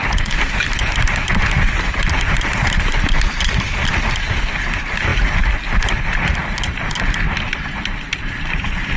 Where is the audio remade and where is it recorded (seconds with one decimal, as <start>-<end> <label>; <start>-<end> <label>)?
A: 0.0-9.0 recorded